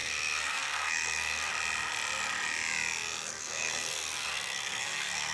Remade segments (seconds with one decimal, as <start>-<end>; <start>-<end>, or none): 0.0-1.5; 3.4-5.3